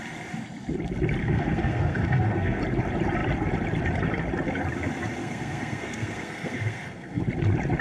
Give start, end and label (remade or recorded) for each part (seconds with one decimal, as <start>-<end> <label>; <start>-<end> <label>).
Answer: 0.0-1.2 recorded; 1.2-2.6 remade; 2.6-5.2 recorded; 5.2-7.2 remade; 7.2-7.8 recorded